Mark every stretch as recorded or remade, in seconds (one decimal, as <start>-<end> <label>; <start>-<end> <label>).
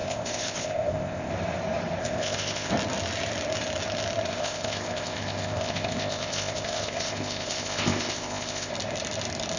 0.0-1.3 remade; 1.3-2.0 recorded; 2.0-2.7 remade; 2.7-4.3 recorded; 4.3-8.7 remade; 8.7-9.6 recorded